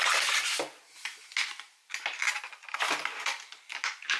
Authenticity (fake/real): real